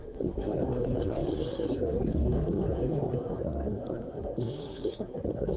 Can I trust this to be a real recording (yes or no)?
no